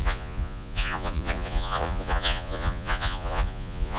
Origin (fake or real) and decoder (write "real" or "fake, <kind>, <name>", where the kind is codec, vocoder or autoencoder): fake, vocoder, Vocos